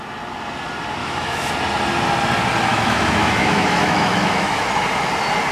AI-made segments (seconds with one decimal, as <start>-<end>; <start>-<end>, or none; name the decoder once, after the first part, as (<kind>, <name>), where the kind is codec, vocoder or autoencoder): 1.0-1.5 (autoencoder, DAC-VAE); 2.7-4.6